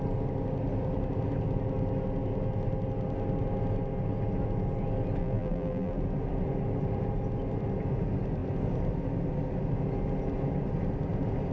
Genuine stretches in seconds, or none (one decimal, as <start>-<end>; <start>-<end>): 0.0-5.2; 6.0-11.5